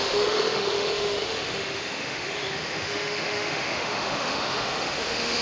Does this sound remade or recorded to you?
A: remade